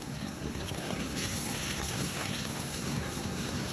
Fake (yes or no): yes